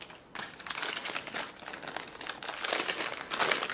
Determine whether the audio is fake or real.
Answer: real